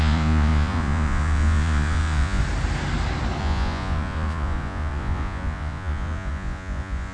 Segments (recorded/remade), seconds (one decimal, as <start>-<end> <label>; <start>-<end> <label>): 0.0-2.4 remade; 2.4-3.4 recorded; 3.4-7.1 remade